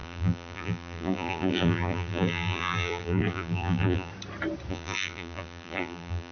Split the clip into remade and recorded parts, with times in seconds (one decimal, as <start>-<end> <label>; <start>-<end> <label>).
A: 0.0-4.1 remade; 4.1-4.7 recorded; 4.7-6.3 remade